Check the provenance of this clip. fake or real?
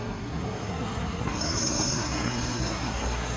fake